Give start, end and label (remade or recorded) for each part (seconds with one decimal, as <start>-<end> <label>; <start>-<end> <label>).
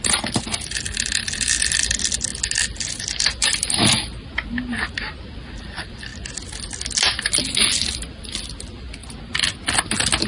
0.0-2.3 remade; 2.3-3.0 recorded; 3.0-3.9 remade; 3.9-5.4 recorded; 5.4-6.1 remade; 6.1-8.1 recorded; 8.1-9.0 remade; 9.0-9.8 recorded; 9.8-10.3 remade